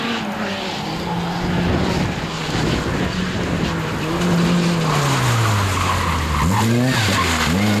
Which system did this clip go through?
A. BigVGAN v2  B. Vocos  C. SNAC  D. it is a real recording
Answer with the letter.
D